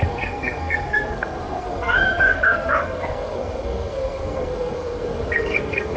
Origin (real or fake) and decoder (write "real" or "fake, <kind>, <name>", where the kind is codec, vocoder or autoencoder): fake, codec, SNAC